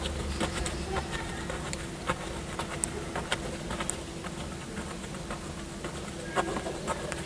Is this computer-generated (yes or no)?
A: no